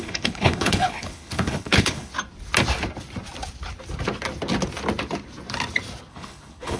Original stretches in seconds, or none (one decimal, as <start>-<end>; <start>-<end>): 2.1-6.1